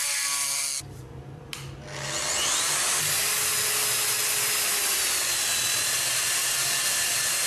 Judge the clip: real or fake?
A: real